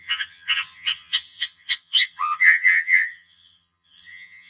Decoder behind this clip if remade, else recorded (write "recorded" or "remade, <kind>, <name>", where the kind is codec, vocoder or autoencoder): remade, vocoder, HiFi-GAN